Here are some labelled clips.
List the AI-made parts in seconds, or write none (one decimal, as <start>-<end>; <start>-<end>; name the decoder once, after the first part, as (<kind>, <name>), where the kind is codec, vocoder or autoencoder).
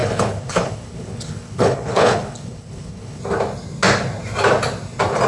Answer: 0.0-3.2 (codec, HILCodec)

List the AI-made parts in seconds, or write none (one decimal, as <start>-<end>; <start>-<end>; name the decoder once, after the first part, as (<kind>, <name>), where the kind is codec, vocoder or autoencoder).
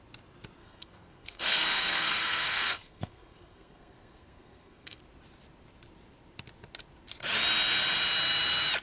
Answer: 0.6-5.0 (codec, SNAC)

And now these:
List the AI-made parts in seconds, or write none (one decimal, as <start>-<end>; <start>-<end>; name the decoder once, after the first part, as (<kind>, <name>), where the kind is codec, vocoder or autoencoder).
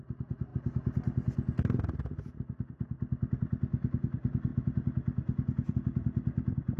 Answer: none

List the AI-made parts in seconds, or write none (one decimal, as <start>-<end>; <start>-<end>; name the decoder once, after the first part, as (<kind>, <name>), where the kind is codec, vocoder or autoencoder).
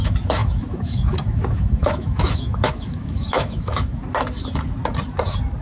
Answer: 0.0-4.0 (autoencoder, DAC-VAE)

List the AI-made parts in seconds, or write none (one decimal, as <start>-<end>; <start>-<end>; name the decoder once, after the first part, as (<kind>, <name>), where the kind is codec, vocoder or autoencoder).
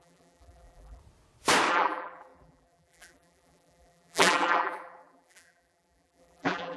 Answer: 0.0-1.0 (vocoder, BigVGAN v2); 1.7-6.8